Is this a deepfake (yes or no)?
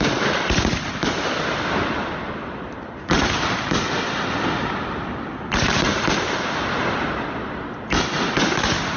yes